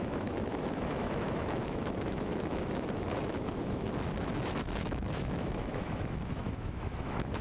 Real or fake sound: fake